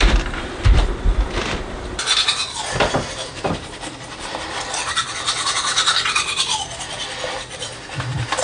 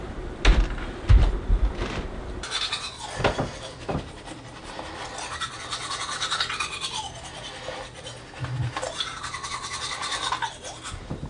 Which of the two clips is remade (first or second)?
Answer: first